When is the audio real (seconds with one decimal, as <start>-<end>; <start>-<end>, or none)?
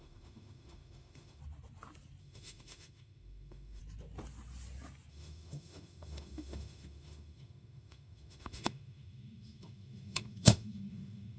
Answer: 1.4-2.2; 3.8-5.1